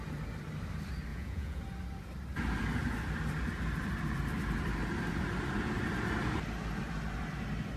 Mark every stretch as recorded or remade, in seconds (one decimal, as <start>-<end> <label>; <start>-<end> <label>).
0.0-1.1 recorded; 1.1-1.6 remade; 1.6-7.8 recorded